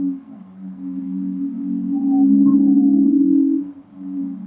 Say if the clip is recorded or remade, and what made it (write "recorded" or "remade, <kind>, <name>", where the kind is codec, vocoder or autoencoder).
remade, codec, SNAC